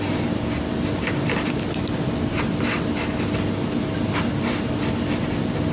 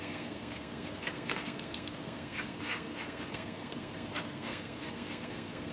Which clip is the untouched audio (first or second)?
first